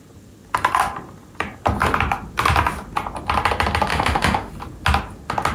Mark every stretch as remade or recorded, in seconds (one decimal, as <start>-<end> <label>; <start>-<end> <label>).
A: 0.0-3.9 recorded; 3.9-4.5 remade; 4.5-5.5 recorded